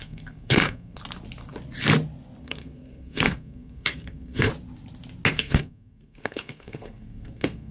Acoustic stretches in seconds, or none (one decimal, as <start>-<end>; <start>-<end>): 1.0-2.4; 4.5-5.3